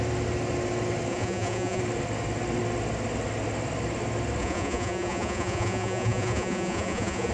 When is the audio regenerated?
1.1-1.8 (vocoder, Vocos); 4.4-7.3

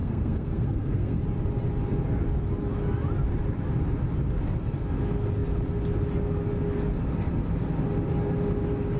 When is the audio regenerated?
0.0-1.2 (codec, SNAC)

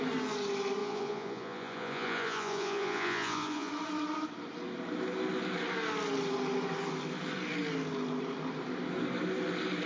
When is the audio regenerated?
0.8-3.7 (vocoder, Vocos)

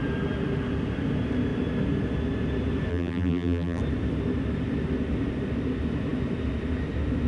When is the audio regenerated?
2.9-3.8 (vocoder, BigVGAN v2)

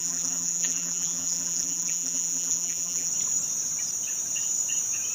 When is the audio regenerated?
0.0-3.1 (vocoder, BigVGAN v2)

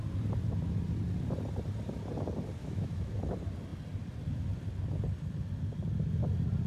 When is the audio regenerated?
2.6-3.1 (autoencoder, DAC-VAE)

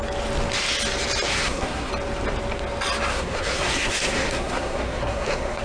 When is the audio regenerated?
1.3-1.9 (codec, SNAC); 3.1-5.6

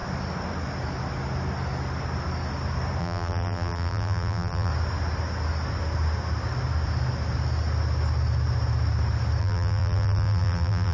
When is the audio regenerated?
3.0-4.7 (vocoder, BigVGAN v2); 9.4-10.9